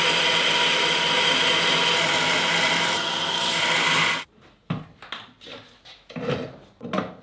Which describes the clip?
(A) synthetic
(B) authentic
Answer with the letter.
B